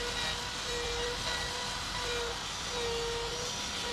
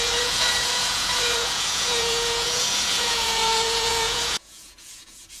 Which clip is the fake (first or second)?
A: second